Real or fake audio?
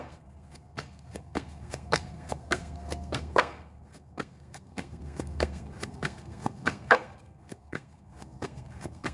fake